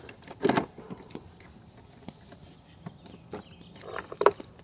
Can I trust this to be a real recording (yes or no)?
yes